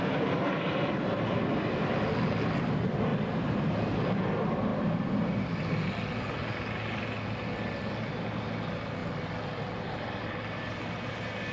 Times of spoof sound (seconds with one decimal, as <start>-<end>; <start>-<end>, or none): 4.7-6.1; 9.0-10.8